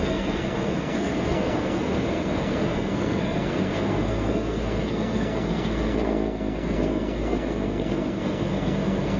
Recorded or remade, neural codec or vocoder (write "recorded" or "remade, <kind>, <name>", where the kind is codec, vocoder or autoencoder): remade, codec, SNAC